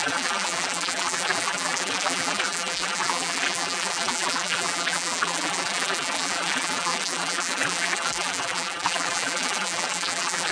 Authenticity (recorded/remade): remade